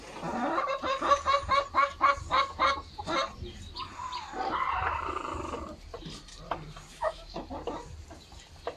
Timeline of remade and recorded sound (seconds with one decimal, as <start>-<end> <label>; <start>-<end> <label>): 0.0-6.9 recorded; 6.9-7.5 remade; 7.5-8.8 recorded